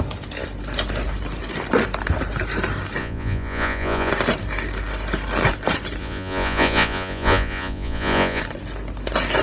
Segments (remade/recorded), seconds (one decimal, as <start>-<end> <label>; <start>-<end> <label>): 0.0-3.0 recorded; 3.0-4.1 remade; 4.1-6.0 recorded; 6.0-8.4 remade; 8.4-9.4 recorded